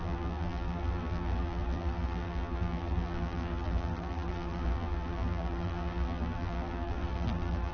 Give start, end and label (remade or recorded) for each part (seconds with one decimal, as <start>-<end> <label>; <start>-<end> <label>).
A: 0.0-7.7 remade